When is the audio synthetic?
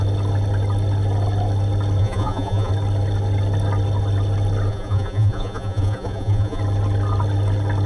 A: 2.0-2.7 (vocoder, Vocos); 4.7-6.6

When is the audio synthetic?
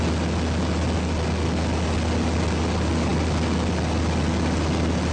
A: none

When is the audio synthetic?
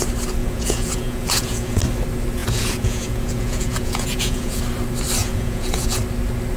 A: 0.4-1.8 (vocoder, Vocos); 2.4-4.6; 5.2-6.0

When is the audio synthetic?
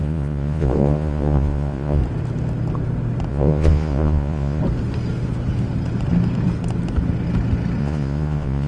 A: 0.0-2.0 (vocoder, Vocos); 3.3-4.6; 7.8-8.7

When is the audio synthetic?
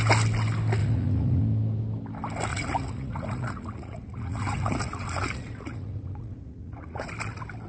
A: 0.8-1.4 (vocoder, Vocos); 2.5-7.1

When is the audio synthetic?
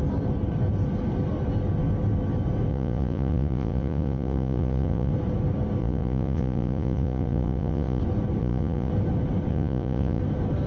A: 2.7-5.1 (vocoder, Vocos); 5.8-8.0; 8.4-8.9; 9.5-10.2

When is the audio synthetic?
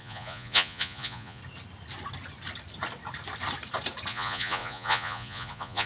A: 0.0-1.4 (vocoder, Vocos); 4.1-5.9